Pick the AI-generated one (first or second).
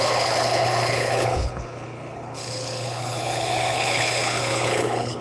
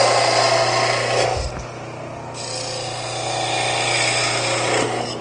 first